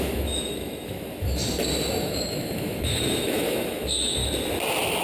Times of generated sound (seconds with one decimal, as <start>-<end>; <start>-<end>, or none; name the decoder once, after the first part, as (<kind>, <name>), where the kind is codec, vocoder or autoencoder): 0.0-1.4 (autoencoder, DAC-VAE); 2.0-4.2